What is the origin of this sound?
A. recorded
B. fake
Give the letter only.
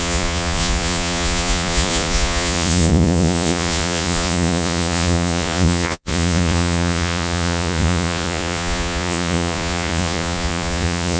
B